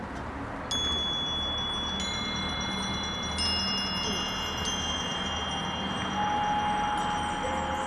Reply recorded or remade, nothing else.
recorded